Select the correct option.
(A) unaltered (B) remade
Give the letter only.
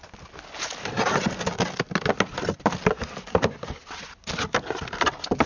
A